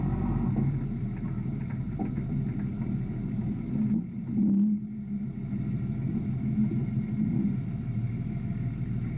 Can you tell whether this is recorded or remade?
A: recorded